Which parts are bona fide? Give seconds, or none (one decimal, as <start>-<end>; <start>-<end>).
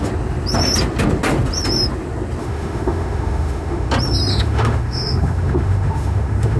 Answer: 0.0-2.4; 3.9-4.3